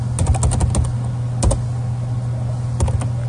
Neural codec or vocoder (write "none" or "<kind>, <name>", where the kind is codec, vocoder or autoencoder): none